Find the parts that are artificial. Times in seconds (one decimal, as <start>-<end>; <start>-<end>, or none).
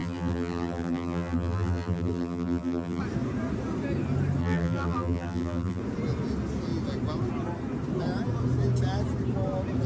0.0-3.0; 4.4-5.8